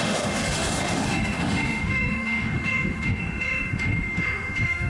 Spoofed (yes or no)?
yes